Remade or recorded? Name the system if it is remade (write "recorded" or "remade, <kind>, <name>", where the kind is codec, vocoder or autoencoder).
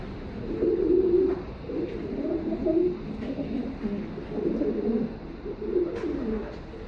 recorded